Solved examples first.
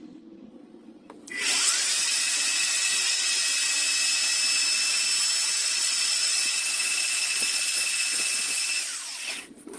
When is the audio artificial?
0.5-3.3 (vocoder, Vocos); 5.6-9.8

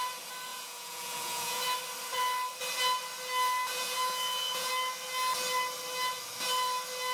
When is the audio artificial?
0.5-1.6 (vocoder, Vocos); 3.7-4.7

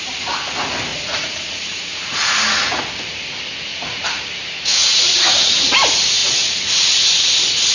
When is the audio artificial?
0.9-2.8 (vocoder, Vocos); 3.7-4.2; 4.7-5.7; 6.2-7.3